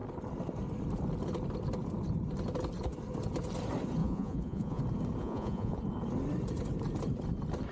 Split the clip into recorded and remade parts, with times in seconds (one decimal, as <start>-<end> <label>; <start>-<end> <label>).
0.0-4.0 recorded; 4.0-4.8 remade; 4.8-5.2 recorded; 5.2-5.8 remade; 5.8-7.7 recorded